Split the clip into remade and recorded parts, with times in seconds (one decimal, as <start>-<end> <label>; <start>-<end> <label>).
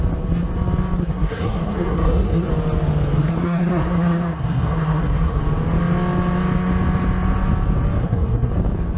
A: 0.0-1.0 recorded; 1.0-2.5 remade; 2.5-3.2 recorded; 3.2-5.4 remade; 5.4-8.0 recorded; 8.0-8.5 remade; 8.5-9.0 recorded